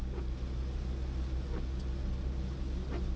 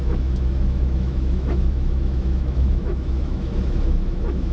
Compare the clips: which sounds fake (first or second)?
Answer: second